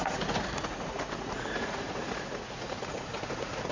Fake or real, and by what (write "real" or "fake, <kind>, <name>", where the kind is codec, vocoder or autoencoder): fake, vocoder, Vocos